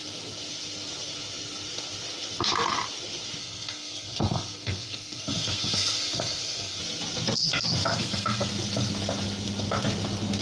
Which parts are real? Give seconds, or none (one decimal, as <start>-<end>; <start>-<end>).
0.0-3.4; 6.8-7.9; 8.5-10.4